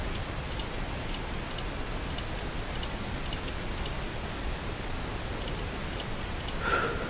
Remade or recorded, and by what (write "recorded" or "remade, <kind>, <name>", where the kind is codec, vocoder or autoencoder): recorded